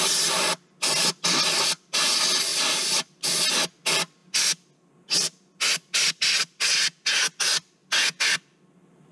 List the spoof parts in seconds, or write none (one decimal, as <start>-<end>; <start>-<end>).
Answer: 2.5-3.2